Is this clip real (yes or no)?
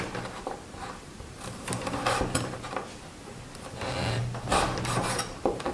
no